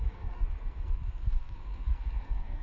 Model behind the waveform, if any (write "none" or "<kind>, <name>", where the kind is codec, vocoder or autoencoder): codec, SNAC